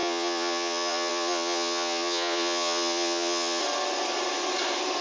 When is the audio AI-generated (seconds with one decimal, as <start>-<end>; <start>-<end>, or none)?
0.0-3.6